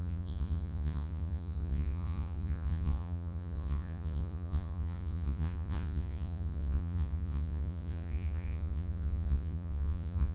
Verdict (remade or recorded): remade